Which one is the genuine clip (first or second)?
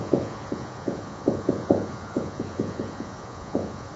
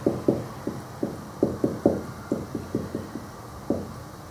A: second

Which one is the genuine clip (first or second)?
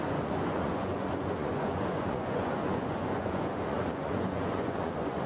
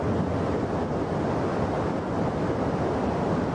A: second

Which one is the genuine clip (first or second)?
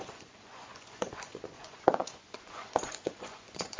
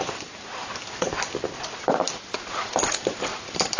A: second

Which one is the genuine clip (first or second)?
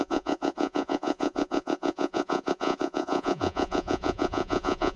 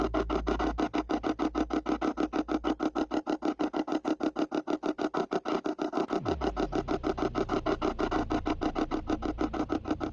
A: second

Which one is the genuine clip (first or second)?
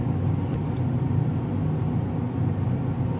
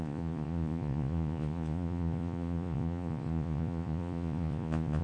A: first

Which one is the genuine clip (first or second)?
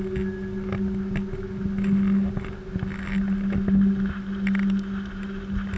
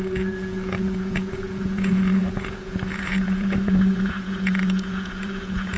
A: first